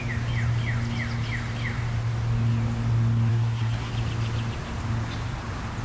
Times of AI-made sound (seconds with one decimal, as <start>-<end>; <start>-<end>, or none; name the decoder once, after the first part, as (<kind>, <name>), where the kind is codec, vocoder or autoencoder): 3.3-3.9 (codec, SNAC)